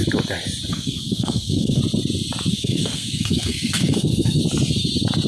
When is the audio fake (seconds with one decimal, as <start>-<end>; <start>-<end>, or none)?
0.7-1.8; 2.5-4.4